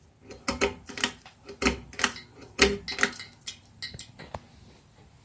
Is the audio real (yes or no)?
yes